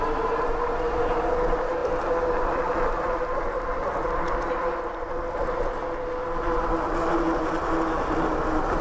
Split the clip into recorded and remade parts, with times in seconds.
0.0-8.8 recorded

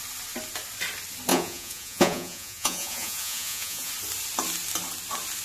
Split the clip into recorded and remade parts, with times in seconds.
0.0-1.3 recorded; 1.3-3.9 remade; 3.9-5.4 recorded

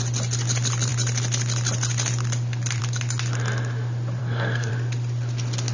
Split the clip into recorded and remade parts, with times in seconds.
0.0-4.2 recorded; 4.2-4.7 remade; 4.7-5.7 recorded

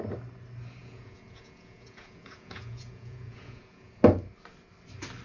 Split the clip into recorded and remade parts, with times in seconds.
0.0-0.8 recorded; 0.8-3.9 remade; 3.9-5.2 recorded

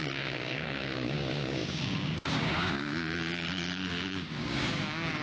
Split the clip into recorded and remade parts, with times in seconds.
0.0-5.2 remade